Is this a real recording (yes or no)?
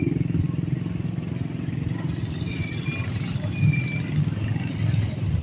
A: yes